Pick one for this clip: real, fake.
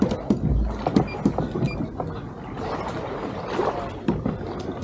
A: real